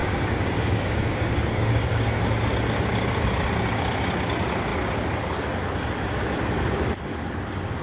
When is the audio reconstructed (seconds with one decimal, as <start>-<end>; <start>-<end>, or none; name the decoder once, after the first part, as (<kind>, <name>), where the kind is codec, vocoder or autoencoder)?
0.0-2.2 (codec, DAC)